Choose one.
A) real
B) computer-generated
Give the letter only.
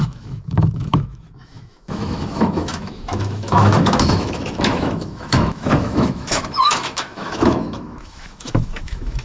B